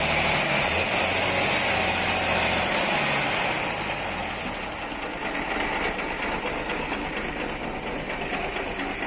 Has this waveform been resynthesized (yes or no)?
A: no